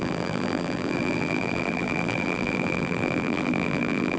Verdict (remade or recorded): remade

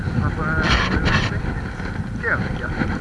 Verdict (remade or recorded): recorded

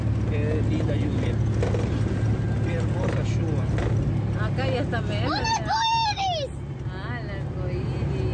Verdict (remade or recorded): recorded